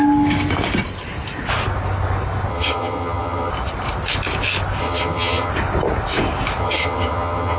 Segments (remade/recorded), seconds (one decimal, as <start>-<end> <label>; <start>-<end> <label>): 0.0-2.5 recorded; 2.5-3.5 remade; 3.5-4.8 recorded; 4.8-5.5 remade; 5.5-6.6 recorded; 6.6-7.6 remade